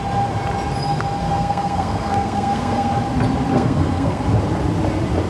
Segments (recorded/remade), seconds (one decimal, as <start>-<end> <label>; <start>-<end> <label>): 0.0-1.2 recorded; 1.2-2.9 remade; 2.9-3.5 recorded; 3.5-4.2 remade; 4.2-5.3 recorded